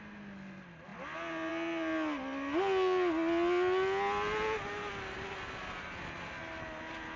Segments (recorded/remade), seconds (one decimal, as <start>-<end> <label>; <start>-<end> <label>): 0.0-7.2 recorded

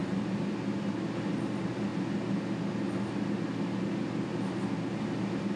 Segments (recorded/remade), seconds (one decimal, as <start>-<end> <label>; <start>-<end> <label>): 0.0-5.6 recorded

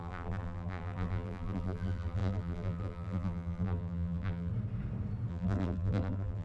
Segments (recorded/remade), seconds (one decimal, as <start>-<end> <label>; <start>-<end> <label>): 0.0-4.5 remade; 4.5-5.3 recorded; 5.3-6.4 remade